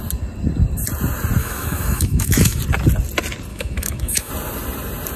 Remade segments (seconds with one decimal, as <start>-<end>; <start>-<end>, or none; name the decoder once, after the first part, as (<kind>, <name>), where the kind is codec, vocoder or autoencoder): 1.4-2.6 (autoencoder, DAC-VAE); 3.5-4.3